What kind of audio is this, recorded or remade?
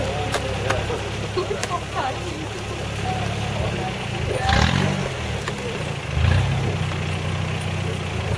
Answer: recorded